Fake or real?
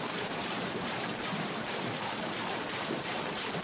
fake